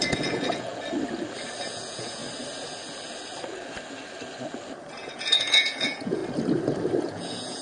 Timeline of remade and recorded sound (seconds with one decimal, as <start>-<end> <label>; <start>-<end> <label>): 0.0-0.7 remade; 0.7-1.6 recorded; 1.6-2.2 remade; 2.2-4.9 recorded; 4.9-6.2 remade; 6.2-7.0 recorded; 7.0-7.6 remade